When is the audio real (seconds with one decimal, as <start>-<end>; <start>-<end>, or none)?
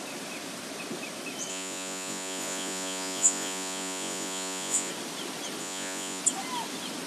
0.0-1.5; 4.9-5.6; 6.2-7.1